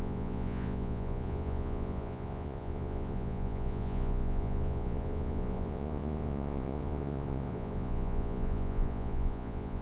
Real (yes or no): no